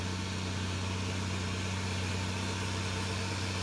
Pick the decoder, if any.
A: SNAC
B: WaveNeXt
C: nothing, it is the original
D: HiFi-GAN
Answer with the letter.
C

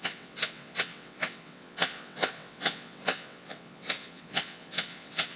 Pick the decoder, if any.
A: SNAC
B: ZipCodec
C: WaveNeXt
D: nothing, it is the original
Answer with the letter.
C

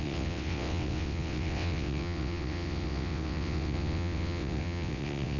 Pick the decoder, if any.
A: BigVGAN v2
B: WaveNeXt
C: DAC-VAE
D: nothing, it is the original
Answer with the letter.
B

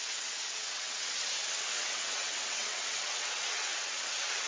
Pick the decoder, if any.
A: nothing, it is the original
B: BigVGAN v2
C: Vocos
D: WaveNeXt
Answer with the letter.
D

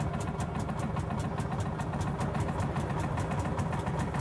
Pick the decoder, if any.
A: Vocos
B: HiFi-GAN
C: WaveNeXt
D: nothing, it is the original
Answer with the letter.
D